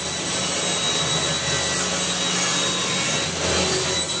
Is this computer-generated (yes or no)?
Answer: no